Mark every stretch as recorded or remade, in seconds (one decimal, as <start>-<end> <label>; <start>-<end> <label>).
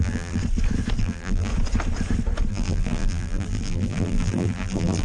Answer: 0.0-0.4 remade; 0.4-1.0 recorded; 1.0-1.5 remade; 1.5-2.5 recorded; 2.5-5.0 remade